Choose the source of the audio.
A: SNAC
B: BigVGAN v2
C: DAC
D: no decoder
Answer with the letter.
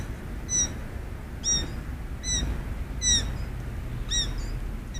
D